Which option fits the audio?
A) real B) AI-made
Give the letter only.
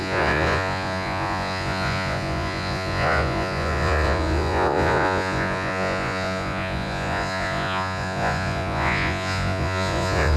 B